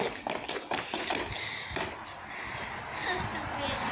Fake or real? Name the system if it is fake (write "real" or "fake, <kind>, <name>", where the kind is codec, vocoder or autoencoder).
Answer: real